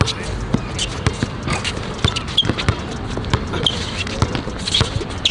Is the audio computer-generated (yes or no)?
no